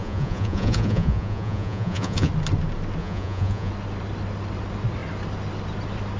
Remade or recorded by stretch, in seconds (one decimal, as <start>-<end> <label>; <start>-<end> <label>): 0.0-2.3 remade; 2.3-3.0 recorded; 3.0-3.7 remade; 3.7-6.2 recorded